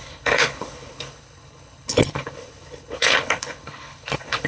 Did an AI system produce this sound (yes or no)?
yes